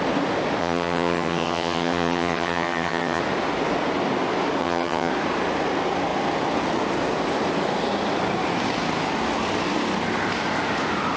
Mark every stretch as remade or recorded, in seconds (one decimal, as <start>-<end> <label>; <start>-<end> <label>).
0.0-0.6 recorded; 0.6-3.2 remade; 3.2-4.6 recorded; 4.6-5.1 remade; 5.1-11.2 recorded

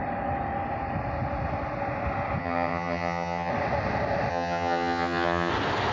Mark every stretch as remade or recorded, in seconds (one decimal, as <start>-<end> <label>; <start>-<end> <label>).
0.0-2.4 recorded; 2.4-3.5 remade; 3.5-4.3 recorded; 4.3-5.5 remade; 5.5-5.9 recorded